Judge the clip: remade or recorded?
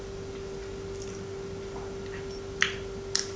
recorded